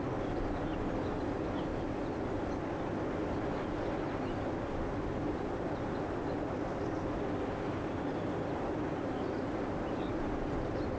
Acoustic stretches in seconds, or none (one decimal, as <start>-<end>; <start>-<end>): 0.0-11.0